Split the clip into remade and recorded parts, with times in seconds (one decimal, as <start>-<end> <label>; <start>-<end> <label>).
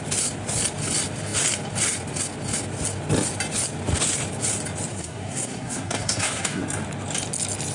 0.0-4.9 recorded; 4.9-6.6 remade; 6.6-7.7 recorded